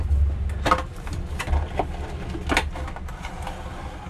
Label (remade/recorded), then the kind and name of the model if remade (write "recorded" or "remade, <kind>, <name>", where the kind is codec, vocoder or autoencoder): recorded